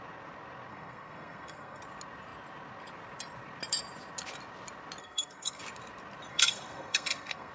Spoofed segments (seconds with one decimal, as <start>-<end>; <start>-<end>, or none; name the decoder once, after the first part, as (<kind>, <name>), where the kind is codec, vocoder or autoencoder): 0.7-1.8 (codec, SNAC); 5.0-5.6; 6.3-7.5